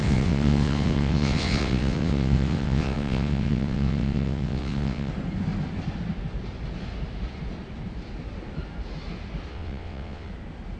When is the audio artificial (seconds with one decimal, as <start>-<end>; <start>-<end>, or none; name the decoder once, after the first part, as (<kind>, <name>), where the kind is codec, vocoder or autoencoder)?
0.0-5.1 (vocoder, WaveNeXt); 9.5-10.3